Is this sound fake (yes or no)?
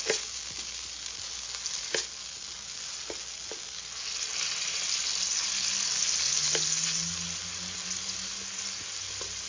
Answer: no